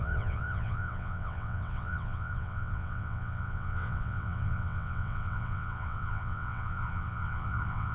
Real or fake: fake